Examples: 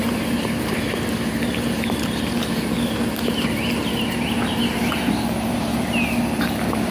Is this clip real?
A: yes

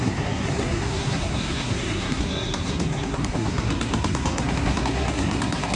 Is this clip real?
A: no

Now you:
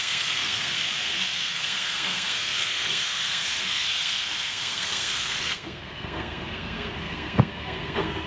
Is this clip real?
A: no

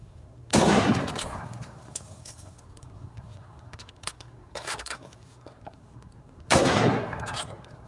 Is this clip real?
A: no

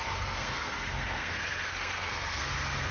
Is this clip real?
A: no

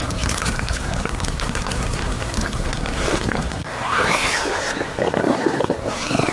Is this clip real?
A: no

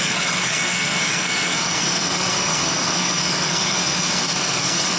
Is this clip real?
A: no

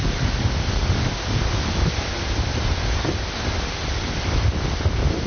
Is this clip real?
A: yes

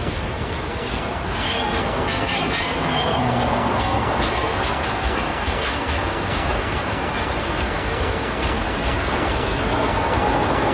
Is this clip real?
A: no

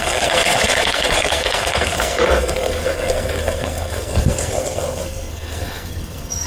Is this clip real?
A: no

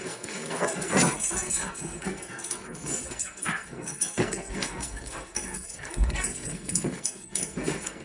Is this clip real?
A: no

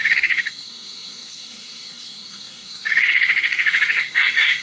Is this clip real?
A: no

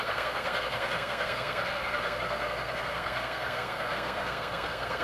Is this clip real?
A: no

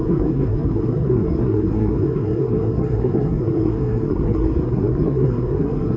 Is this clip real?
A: no